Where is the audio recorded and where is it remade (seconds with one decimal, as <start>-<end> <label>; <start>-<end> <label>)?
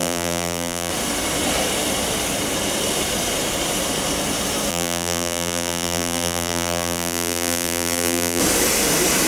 0.0-0.9 remade; 0.9-4.7 recorded; 4.7-8.4 remade; 8.4-9.3 recorded